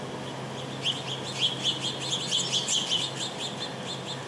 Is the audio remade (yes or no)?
no